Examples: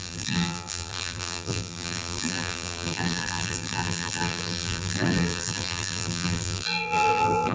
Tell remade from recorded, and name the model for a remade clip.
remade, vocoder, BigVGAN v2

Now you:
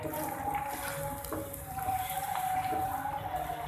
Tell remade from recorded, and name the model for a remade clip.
recorded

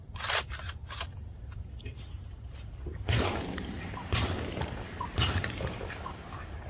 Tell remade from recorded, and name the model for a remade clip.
remade, vocoder, BigVGAN v2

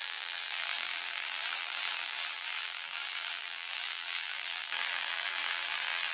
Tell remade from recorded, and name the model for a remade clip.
remade, vocoder, BigVGAN v2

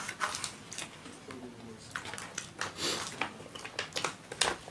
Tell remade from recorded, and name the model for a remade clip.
recorded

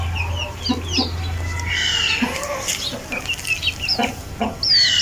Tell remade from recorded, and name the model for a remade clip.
recorded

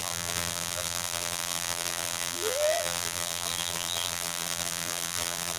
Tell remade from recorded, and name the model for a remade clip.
remade, vocoder, BigVGAN v2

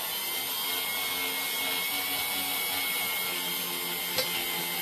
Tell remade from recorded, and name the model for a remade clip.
recorded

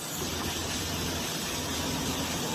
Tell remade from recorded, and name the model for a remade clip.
remade, vocoder, BigVGAN v2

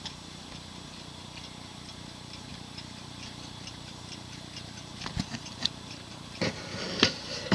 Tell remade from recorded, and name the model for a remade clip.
remade, vocoder, BigVGAN v2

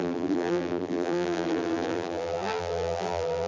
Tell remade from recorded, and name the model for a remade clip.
remade, vocoder, BigVGAN v2